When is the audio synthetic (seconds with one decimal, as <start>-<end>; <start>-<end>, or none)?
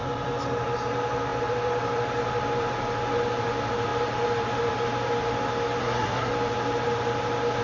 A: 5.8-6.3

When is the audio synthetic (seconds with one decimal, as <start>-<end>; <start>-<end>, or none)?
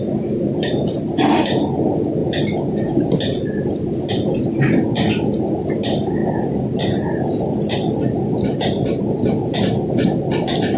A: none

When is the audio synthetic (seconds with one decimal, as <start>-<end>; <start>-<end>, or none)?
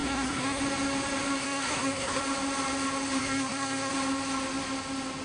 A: 0.0-0.6; 1.4-2.2; 3.2-3.9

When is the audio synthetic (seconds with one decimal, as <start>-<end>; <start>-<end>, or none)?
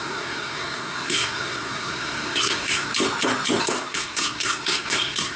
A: 0.0-2.9; 3.6-5.4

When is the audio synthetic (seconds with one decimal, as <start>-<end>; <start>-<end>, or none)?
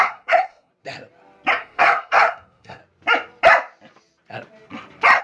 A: 0.0-0.7; 1.5-2.8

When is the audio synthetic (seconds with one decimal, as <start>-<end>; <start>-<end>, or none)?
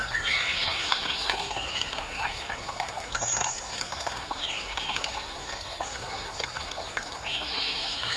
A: 0.0-8.2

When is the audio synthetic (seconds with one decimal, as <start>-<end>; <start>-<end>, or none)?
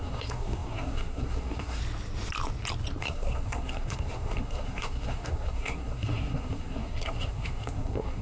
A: 0.0-1.8; 3.0-8.2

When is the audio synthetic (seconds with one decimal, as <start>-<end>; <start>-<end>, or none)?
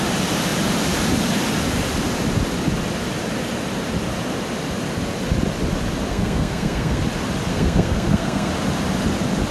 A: 6.1-7.0; 7.5-8.5